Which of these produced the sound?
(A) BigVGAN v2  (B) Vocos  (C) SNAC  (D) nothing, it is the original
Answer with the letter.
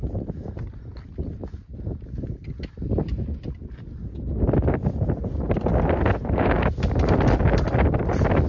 D